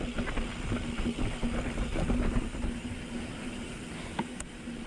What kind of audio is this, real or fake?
real